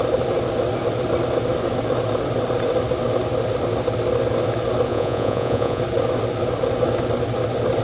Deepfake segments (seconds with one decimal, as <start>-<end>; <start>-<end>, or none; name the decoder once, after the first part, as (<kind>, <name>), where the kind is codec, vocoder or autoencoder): 4.9-5.8 (vocoder, Vocos)